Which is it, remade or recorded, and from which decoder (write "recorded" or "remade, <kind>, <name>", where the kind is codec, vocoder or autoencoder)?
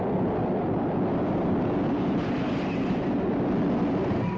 recorded